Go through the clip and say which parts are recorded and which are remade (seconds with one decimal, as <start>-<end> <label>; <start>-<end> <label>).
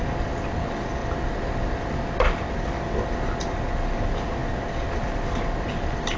0.0-6.2 recorded